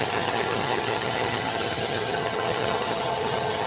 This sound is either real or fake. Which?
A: fake